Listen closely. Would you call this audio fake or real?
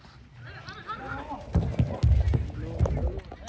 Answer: real